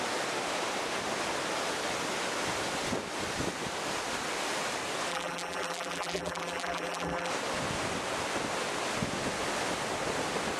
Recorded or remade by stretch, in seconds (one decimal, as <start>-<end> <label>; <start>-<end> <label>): 0.0-5.1 recorded; 5.1-7.3 remade; 7.3-10.6 recorded